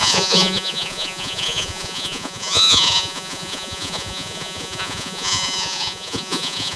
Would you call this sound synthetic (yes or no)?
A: yes